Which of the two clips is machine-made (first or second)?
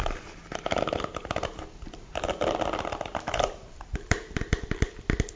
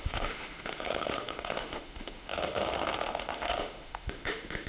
second